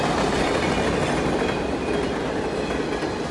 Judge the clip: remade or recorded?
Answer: recorded